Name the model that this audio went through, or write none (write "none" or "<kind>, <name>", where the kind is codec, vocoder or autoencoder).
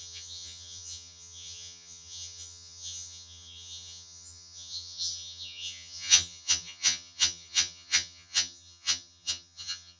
vocoder, HiFi-GAN